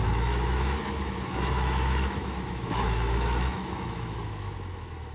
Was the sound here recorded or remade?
remade